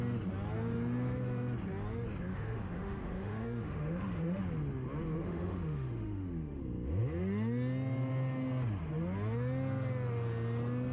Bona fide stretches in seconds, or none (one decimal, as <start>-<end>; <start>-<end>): 0.0-2.3; 4.4-5.2; 6.6-10.9